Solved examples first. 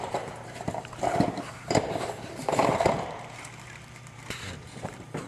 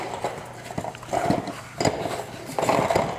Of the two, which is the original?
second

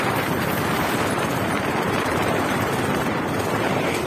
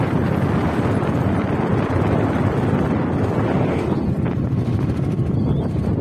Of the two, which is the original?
second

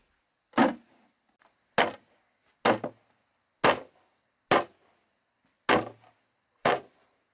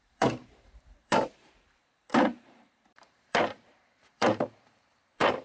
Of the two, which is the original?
first